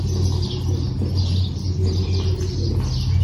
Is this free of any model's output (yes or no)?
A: yes